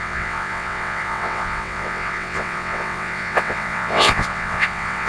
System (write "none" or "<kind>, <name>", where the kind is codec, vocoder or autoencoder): vocoder, WaveNeXt